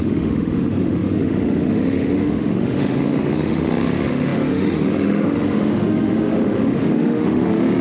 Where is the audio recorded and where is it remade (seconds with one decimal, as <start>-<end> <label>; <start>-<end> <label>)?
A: 0.0-7.8 remade